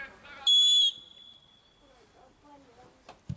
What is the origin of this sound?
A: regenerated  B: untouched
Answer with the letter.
B